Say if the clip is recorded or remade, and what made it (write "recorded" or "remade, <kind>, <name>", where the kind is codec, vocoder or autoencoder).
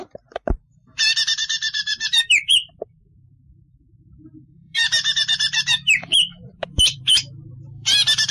remade, vocoder, BigVGAN v2